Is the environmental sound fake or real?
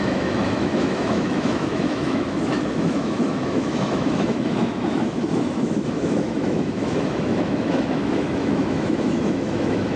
fake